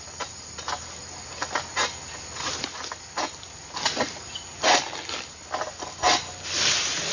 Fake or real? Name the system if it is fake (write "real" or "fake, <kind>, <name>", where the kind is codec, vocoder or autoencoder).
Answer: real